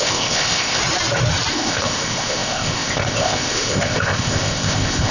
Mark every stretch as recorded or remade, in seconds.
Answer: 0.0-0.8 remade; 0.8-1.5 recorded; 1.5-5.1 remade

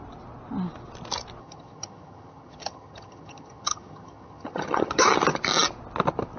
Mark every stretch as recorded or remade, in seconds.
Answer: 0.0-1.4 recorded; 1.4-5.0 remade; 5.0-6.4 recorded

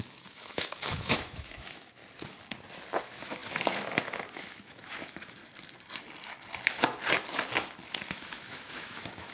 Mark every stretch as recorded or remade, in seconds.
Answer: 0.0-2.0 remade; 2.0-3.0 recorded; 3.0-5.4 remade; 5.4-8.1 recorded; 8.1-9.3 remade